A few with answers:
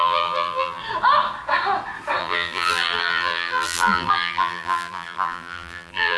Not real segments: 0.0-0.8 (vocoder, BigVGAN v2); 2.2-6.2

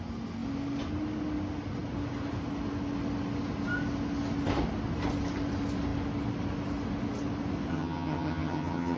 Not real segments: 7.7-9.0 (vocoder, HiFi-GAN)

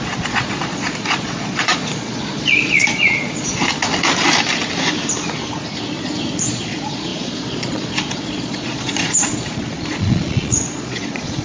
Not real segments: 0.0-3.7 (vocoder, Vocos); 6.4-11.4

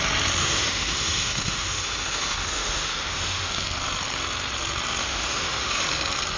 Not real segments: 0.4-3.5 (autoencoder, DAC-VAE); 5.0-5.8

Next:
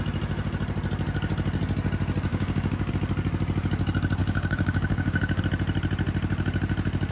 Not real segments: 2.3-2.9 (codec, DAC); 4.2-5.4

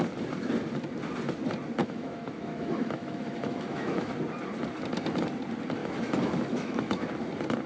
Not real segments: 1.8-4.1 (autoencoder, DAC-VAE); 5.8-7.1

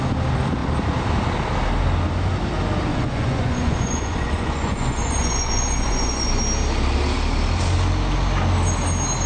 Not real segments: 2.9-6.4 (vocoder, Vocos)